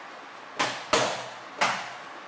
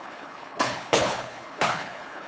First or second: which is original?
first